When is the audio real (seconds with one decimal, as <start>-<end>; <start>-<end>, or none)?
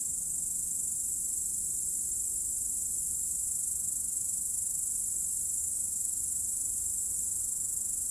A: 0.0-5.6; 6.2-8.1